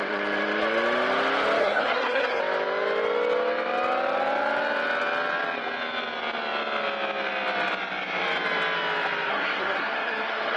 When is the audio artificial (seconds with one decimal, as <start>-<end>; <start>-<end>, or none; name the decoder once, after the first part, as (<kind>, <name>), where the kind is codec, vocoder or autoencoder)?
1.6-2.4 (codec, SNAC); 9.3-10.6